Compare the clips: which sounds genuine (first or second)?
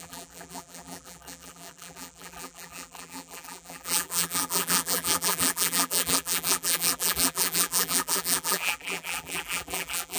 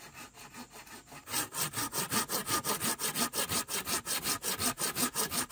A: second